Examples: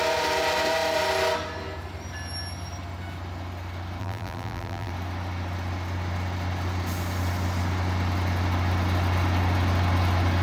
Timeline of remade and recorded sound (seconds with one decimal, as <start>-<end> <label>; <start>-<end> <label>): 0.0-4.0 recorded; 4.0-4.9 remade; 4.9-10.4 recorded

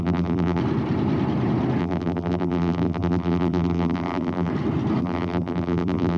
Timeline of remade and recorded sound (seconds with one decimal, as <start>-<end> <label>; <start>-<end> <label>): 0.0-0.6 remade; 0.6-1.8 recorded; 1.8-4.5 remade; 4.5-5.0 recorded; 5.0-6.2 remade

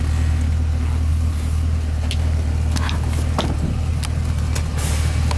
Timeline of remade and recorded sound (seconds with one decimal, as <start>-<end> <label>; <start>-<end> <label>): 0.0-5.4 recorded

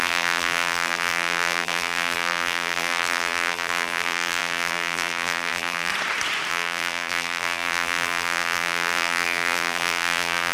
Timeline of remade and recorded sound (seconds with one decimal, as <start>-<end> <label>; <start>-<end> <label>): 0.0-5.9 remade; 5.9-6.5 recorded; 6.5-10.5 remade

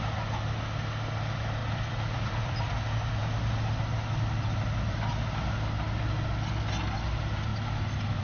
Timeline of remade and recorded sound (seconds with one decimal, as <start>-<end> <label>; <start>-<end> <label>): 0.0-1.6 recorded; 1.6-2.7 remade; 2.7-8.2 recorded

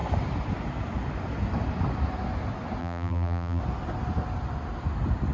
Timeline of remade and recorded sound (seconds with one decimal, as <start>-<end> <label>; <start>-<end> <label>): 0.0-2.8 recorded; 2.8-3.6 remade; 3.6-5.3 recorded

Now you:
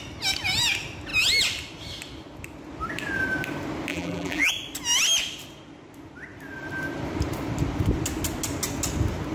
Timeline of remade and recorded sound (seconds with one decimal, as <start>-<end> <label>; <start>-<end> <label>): 0.0-3.9 recorded; 3.9-4.5 remade; 4.5-9.3 recorded

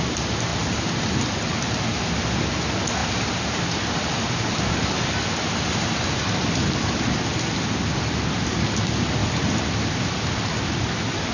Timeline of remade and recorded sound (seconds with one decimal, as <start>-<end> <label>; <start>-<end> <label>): 0.0-0.5 recorded; 0.5-1.2 remade; 1.2-3.0 recorded; 3.0-4.4 remade; 4.4-9.2 recorded; 9.2-10.2 remade; 10.2-11.3 recorded